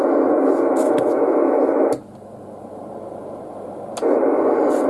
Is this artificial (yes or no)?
no